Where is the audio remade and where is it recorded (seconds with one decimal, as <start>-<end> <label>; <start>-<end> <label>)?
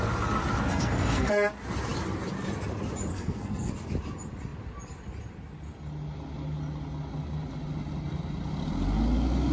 0.0-0.7 recorded; 0.7-1.3 remade; 1.3-3.1 recorded; 3.1-3.7 remade; 3.7-9.5 recorded